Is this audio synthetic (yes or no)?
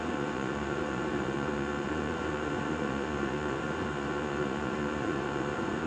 yes